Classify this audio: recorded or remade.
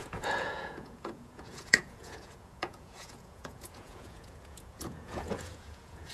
remade